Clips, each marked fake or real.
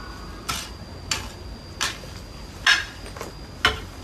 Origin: real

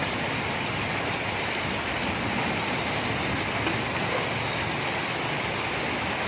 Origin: real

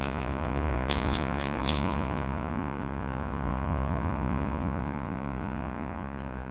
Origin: fake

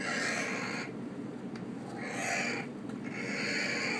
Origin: real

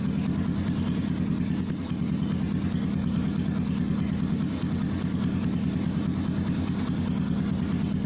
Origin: real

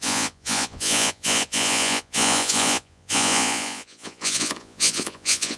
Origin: fake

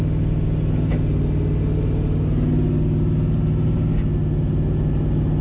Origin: real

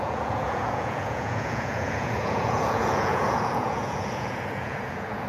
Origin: fake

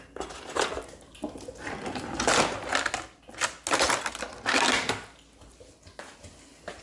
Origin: real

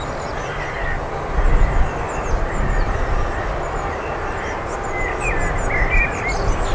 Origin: real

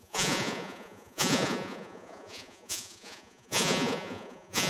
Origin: fake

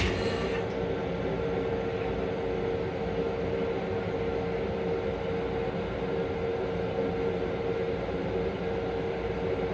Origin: real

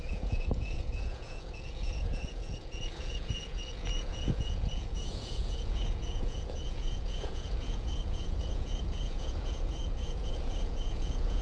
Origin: fake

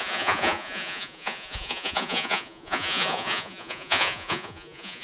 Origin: fake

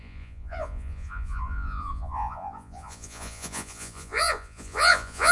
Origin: fake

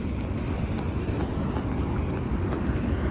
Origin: real